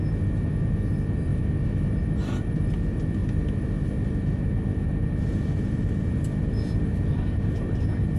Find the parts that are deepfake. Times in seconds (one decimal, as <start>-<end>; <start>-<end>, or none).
0.0-1.3; 2.0-3.2; 4.1-8.2